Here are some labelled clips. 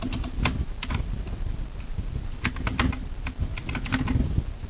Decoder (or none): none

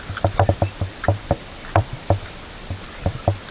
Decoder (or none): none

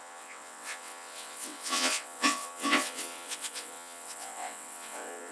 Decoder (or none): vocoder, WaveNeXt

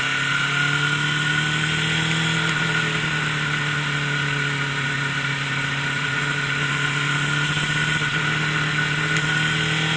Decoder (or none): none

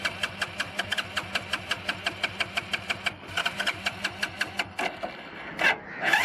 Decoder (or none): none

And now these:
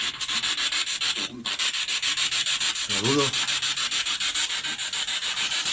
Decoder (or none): none